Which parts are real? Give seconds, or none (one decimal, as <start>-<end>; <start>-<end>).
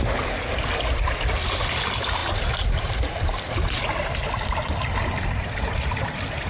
0.0-6.5